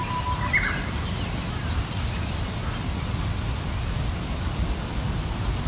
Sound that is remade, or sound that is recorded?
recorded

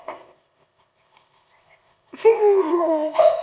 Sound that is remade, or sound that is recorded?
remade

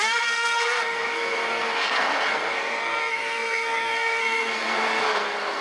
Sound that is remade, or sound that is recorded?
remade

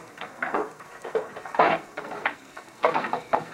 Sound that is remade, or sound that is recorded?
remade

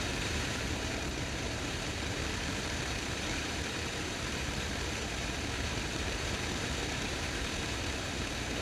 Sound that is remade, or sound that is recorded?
remade